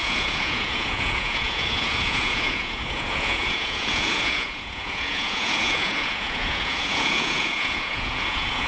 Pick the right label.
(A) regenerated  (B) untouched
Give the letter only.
A